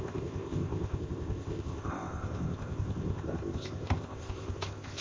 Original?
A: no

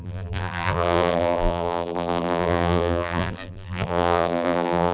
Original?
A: no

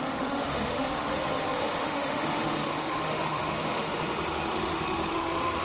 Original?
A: no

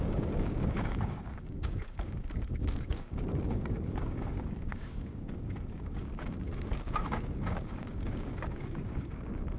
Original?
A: no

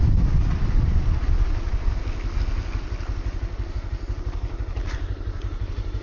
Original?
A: yes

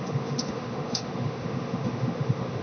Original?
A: no